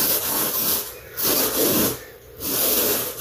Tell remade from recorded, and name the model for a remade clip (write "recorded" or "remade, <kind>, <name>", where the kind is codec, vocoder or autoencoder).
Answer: recorded